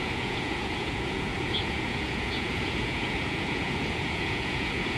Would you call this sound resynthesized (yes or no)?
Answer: yes